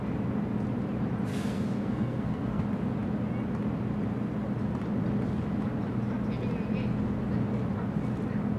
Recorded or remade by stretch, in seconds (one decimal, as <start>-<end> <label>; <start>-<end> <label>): 0.0-1.3 recorded; 1.3-2.6 remade; 2.6-8.6 recorded